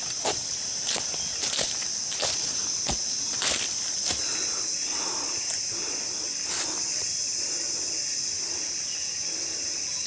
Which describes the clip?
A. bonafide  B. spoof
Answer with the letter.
A